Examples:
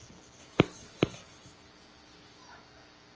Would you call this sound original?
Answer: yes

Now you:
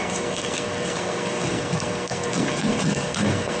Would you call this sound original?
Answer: no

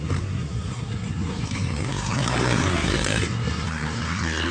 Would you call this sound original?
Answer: no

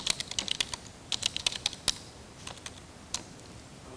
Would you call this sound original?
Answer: yes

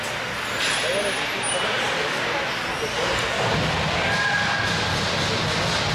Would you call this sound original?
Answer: yes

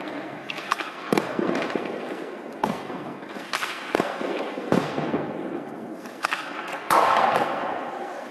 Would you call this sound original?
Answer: no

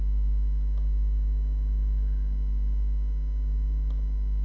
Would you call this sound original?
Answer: yes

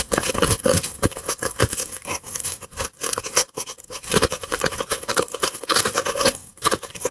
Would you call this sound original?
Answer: no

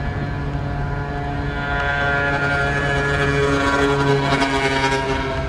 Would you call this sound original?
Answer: yes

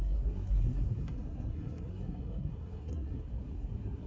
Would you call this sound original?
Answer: no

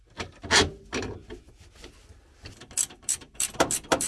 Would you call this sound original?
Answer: yes